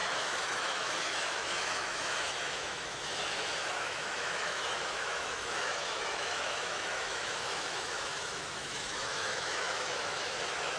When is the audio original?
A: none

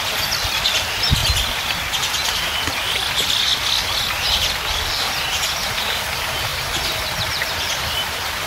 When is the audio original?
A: 0.0-6.5; 7.5-8.5

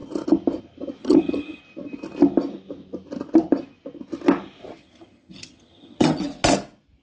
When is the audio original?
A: 0.0-1.0; 1.6-4.8; 6.2-7.0

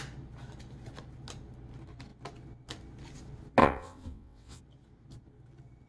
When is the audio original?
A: 0.0-3.6; 4.6-5.9

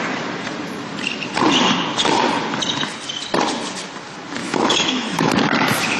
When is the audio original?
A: 0.0-4.4; 5.3-6.0

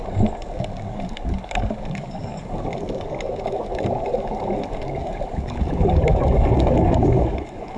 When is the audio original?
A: none

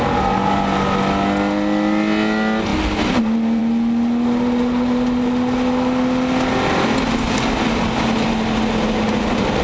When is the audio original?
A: 0.0-9.6

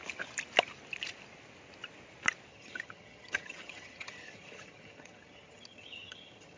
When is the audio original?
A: 0.0-2.5